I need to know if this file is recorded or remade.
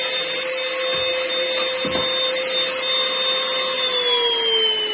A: recorded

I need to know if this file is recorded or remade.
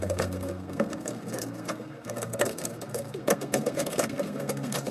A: remade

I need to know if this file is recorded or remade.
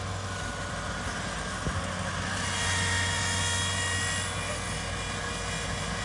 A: recorded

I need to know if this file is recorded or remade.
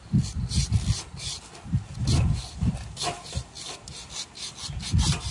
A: recorded